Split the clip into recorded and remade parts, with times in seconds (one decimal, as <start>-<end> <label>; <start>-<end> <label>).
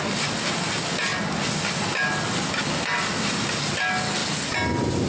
0.0-5.1 recorded